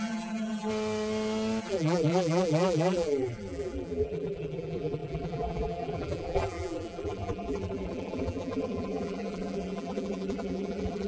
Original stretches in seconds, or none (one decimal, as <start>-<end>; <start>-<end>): 0.7-1.6